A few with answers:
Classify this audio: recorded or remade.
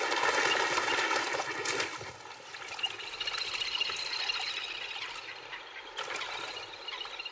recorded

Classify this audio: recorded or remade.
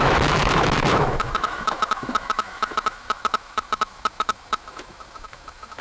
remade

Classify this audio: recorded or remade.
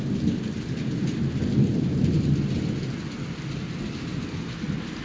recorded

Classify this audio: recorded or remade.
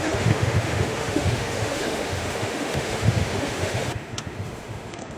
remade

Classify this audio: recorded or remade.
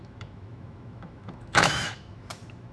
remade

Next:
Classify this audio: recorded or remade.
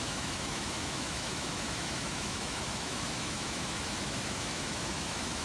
remade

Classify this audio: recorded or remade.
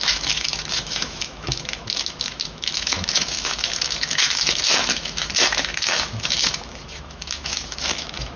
remade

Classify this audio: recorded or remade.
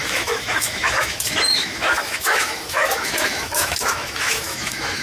remade